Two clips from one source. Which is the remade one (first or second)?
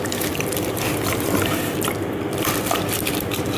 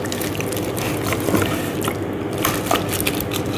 first